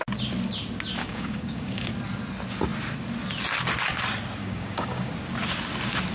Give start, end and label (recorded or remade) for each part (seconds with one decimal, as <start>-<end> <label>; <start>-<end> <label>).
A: 0.0-1.0 recorded; 1.0-1.9 remade; 1.9-4.4 recorded; 4.4-5.1 remade; 5.1-6.1 recorded